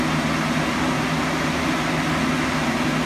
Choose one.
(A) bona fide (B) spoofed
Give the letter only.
A